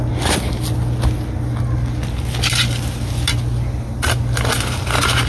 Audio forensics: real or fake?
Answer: real